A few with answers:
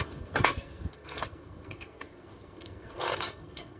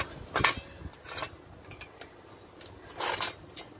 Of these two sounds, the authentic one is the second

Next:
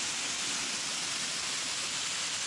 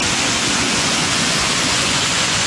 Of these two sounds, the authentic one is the first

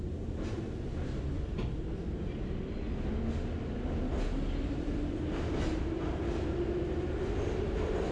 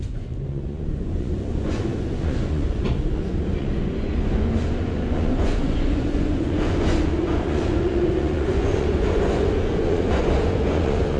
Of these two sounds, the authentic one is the first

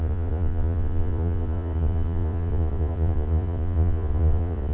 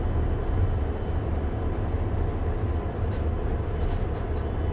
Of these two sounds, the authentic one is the second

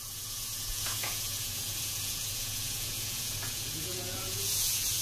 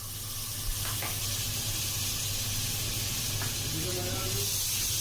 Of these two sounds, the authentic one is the second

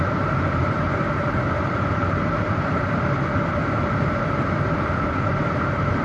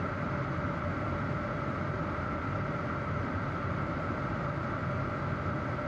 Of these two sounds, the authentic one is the second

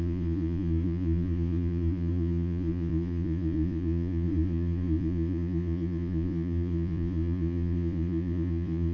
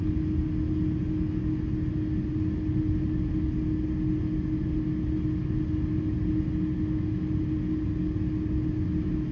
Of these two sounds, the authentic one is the second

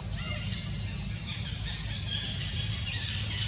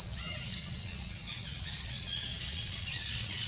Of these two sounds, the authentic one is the first